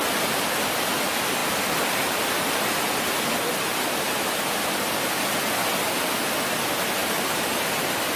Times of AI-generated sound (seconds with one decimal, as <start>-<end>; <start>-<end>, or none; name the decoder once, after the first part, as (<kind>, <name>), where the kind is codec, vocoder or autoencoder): none